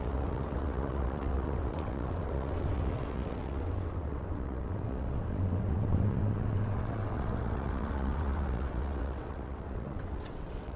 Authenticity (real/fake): fake